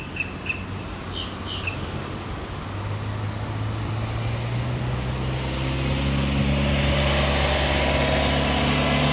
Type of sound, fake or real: real